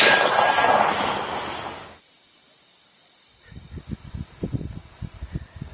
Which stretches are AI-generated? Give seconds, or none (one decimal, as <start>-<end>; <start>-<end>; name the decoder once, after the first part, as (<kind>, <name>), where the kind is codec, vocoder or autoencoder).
none